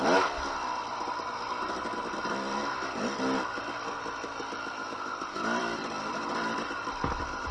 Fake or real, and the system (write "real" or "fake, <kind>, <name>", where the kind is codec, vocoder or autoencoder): real